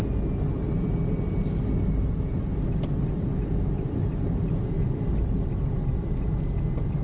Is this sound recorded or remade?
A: recorded